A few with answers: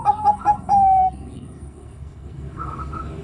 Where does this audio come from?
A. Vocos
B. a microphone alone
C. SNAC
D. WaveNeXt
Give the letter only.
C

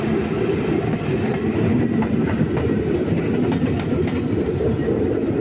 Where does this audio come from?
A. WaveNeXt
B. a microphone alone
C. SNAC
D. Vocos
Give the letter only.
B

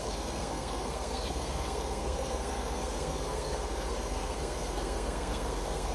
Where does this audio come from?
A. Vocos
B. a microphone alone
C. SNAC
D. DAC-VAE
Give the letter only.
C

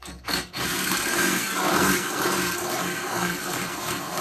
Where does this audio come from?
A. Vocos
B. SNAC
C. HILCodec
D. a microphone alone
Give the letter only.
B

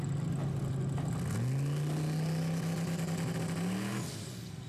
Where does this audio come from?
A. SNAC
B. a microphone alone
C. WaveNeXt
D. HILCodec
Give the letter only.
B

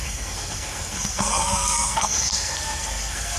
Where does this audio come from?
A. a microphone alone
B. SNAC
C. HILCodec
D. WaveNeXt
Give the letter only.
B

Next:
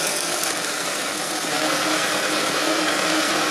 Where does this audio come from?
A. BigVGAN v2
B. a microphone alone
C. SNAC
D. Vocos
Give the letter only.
C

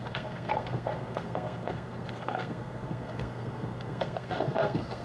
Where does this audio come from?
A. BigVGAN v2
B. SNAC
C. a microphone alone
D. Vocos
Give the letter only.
B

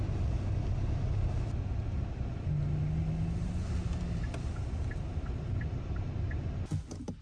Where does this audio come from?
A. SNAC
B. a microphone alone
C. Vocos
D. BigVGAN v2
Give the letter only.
B